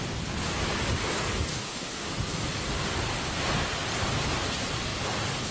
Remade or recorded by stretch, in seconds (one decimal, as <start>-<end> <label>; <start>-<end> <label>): 0.0-1.5 recorded; 1.5-2.1 remade; 2.1-5.5 recorded